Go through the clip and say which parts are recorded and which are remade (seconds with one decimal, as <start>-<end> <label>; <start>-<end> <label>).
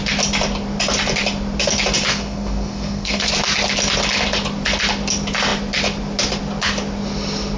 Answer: 0.0-2.1 recorded; 2.1-3.3 remade; 3.3-7.6 recorded